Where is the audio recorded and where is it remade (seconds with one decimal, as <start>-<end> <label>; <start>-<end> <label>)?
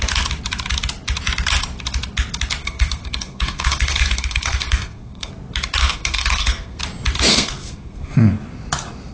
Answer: 0.0-2.6 recorded; 2.6-5.3 remade; 5.3-5.8 recorded; 5.8-6.8 remade; 6.8-7.3 recorded; 7.3-8.1 remade; 8.1-9.1 recorded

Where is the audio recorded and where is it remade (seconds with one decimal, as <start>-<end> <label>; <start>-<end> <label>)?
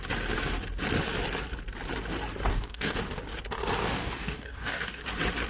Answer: 0.0-2.5 recorded; 2.5-3.0 remade; 3.0-3.8 recorded; 3.8-5.0 remade; 5.0-5.5 recorded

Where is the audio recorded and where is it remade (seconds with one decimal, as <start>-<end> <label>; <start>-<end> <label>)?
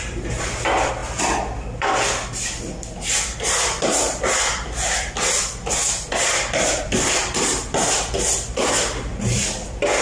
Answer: 0.0-10.0 recorded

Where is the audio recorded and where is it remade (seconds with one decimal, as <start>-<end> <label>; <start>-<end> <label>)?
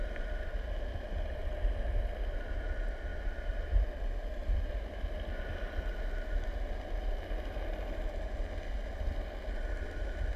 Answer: 0.0-10.4 recorded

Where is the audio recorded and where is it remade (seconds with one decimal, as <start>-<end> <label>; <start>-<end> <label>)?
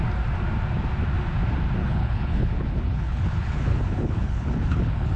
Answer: 0.0-1.8 recorded; 1.8-5.2 remade